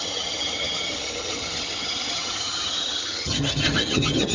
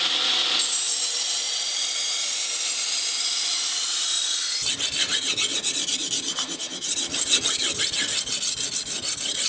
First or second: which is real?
second